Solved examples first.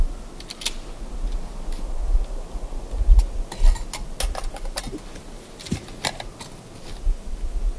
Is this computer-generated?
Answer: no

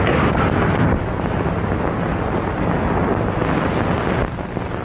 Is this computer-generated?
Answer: no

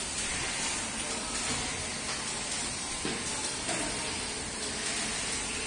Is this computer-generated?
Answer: no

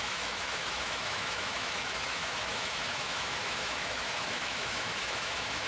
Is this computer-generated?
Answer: yes